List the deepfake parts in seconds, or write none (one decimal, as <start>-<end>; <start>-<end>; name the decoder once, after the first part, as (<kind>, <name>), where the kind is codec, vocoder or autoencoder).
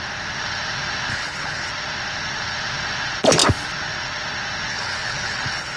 1.1-1.7 (codec, HILCodec); 4.7-5.8